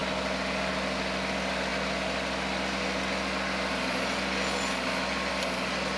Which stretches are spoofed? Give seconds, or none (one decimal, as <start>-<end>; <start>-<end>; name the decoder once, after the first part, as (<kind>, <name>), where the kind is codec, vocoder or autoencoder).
none